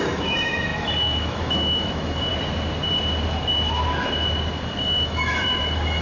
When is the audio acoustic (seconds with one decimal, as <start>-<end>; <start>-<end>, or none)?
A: 2.3-4.8